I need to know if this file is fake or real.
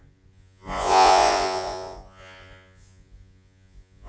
fake